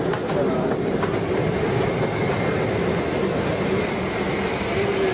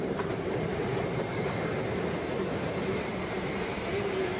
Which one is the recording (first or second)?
first